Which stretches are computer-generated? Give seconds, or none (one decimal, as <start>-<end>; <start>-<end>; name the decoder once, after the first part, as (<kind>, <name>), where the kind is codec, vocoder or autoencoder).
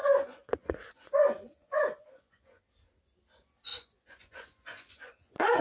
0.0-2.6 (vocoder, Vocos); 3.7-5.6